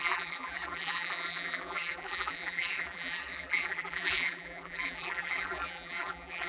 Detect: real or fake fake